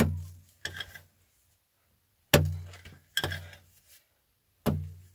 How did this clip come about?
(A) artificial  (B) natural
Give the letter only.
B